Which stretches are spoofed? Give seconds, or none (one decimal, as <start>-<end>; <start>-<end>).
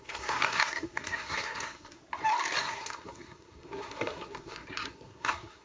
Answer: 0.0-2.0; 2.6-5.6